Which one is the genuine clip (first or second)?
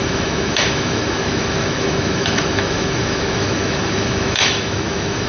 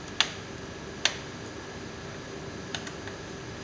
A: second